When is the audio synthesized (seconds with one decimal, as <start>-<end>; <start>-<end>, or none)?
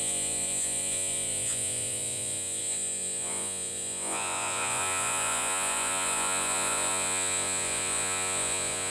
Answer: 0.0-8.9